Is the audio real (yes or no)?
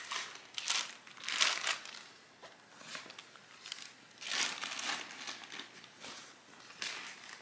yes